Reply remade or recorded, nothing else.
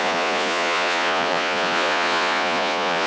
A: remade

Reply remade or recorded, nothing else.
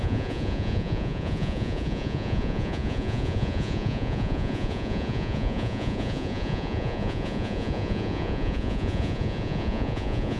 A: remade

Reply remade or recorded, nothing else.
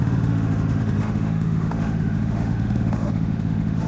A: remade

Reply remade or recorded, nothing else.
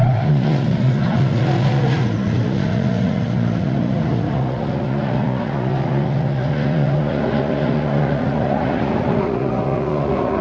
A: remade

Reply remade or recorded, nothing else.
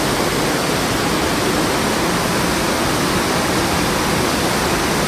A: recorded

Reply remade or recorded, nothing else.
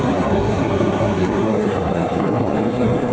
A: remade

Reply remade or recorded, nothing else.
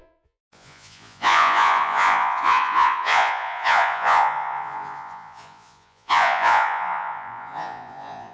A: remade